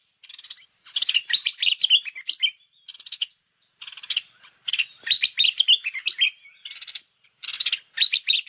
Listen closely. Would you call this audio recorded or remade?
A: recorded